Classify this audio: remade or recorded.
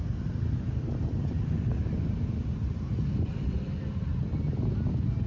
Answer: recorded